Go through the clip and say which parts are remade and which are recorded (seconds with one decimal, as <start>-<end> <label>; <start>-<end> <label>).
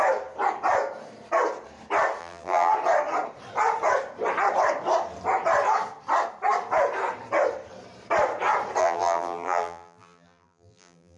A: 0.0-2.2 recorded; 2.2-2.7 remade; 2.7-8.8 recorded; 8.8-11.2 remade